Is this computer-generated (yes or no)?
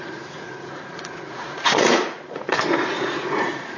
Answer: yes